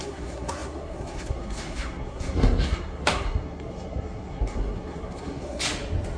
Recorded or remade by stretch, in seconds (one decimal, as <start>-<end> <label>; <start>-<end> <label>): 0.0-5.6 remade; 5.6-6.2 recorded

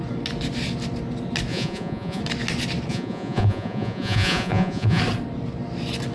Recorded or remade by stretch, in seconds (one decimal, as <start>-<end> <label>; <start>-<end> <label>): 0.0-1.5 recorded; 1.5-2.2 remade; 2.2-2.9 recorded; 2.9-5.0 remade; 5.0-6.1 recorded

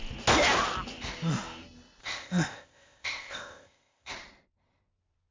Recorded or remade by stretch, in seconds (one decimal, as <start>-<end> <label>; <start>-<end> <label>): 0.0-2.0 recorded; 2.0-4.1 remade; 4.1-5.3 recorded